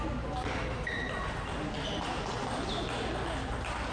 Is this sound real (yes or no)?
yes